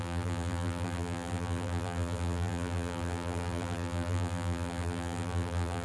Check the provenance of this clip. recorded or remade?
remade